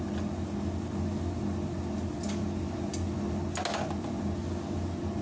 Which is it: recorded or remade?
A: recorded